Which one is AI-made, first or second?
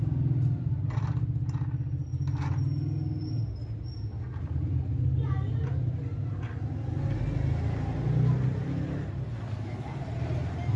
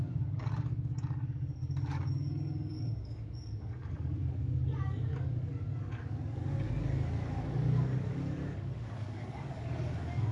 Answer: second